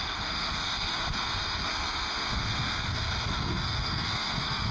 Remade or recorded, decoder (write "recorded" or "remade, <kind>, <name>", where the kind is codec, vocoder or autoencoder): remade, codec, SNAC